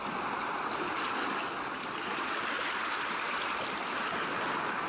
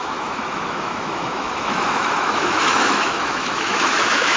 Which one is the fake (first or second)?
second